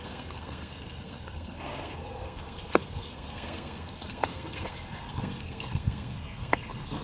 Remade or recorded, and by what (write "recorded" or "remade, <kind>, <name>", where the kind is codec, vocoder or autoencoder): remade, codec, SNAC